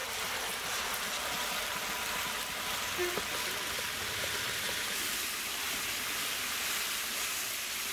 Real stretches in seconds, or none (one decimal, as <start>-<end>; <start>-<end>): 1.1-4.0; 7.2-7.9